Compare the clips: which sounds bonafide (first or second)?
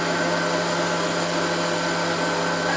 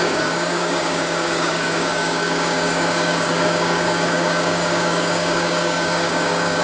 first